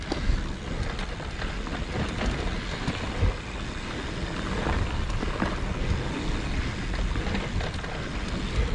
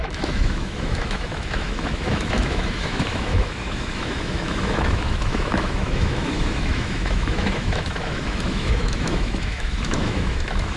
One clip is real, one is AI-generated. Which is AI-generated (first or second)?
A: second